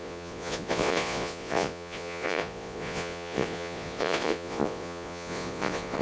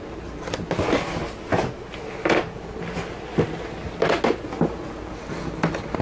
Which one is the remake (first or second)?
first